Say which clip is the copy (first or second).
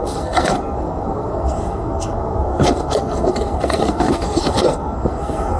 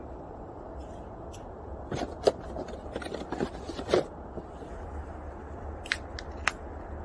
first